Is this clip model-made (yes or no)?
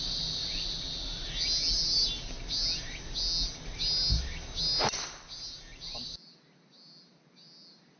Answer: no